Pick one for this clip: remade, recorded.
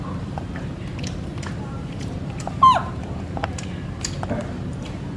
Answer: remade